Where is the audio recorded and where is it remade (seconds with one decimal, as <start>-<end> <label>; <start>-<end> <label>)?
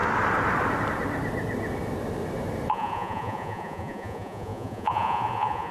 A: 0.0-2.7 recorded; 2.7-5.7 remade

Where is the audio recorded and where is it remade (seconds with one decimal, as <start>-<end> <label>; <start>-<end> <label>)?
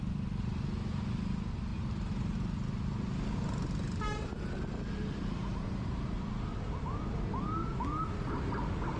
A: 0.0-9.0 recorded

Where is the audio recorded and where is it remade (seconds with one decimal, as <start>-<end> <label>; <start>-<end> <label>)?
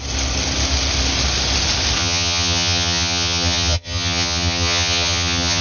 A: 0.0-2.0 recorded; 2.0-5.6 remade